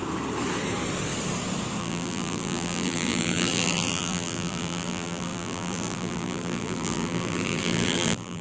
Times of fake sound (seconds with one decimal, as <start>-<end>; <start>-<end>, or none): 1.8-8.4